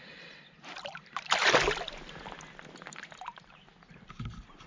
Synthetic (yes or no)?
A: no